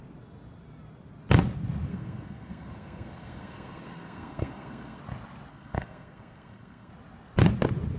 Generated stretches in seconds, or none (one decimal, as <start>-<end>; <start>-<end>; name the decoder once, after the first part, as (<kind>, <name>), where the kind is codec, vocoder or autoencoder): 1.9-5.0 (codec, SNAC); 5.5-6.9